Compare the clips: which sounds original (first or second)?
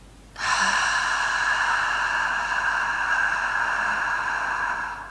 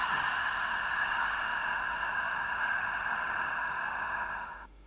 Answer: first